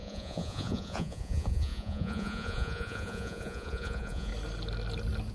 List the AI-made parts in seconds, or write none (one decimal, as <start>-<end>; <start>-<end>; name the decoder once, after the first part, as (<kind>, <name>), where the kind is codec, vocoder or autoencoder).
0.0-4.3 (vocoder, Vocos)